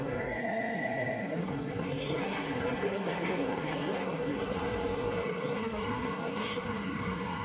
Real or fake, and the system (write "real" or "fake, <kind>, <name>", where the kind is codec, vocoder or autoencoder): fake, codec, SNAC